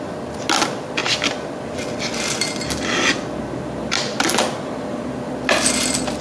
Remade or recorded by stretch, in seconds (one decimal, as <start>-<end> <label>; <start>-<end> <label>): 0.0-6.2 recorded